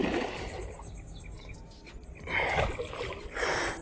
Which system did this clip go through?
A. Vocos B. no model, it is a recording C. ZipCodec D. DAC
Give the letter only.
B